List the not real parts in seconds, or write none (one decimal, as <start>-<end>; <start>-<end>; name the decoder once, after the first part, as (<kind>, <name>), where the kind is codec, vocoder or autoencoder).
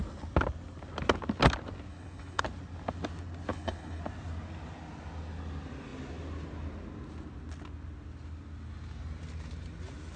1.9-2.4 (codec, HILCodec); 3.5-4.0